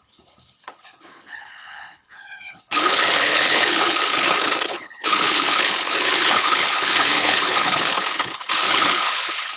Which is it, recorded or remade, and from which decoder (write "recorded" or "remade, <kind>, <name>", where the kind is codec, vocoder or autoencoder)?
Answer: remade, codec, HILCodec